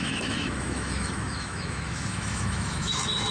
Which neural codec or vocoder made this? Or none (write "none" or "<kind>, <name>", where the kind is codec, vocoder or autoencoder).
autoencoder, DAC-VAE